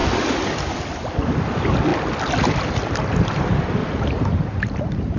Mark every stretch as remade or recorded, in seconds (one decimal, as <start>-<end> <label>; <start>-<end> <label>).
0.0-1.3 remade; 1.3-3.8 recorded; 3.8-4.4 remade; 4.4-5.2 recorded